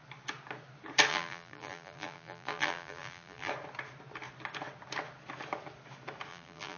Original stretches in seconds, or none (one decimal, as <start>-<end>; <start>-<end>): 0.0-1.1; 3.5-6.3